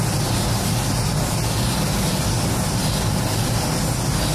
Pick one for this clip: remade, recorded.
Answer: recorded